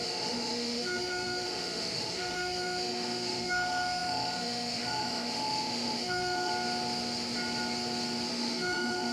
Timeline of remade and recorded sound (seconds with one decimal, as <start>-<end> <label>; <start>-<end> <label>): 0.0-6.5 remade; 6.5-8.3 recorded; 8.3-9.1 remade